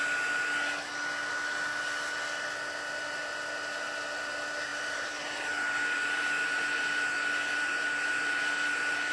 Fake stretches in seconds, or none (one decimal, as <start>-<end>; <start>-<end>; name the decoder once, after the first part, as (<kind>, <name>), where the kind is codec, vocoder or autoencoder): 4.7-5.5 (vocoder, BigVGAN v2)